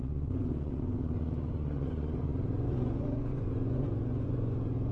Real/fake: fake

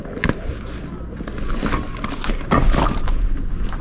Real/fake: real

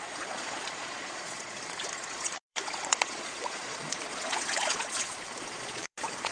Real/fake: fake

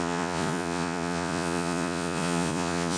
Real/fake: fake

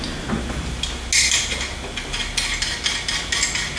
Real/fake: real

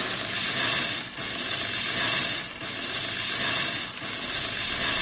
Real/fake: real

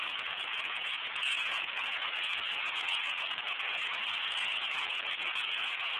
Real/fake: fake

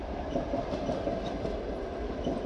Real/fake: real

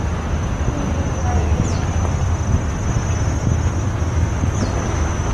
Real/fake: real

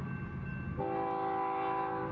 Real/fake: real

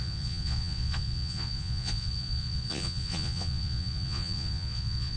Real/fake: fake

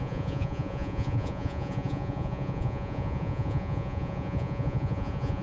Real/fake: fake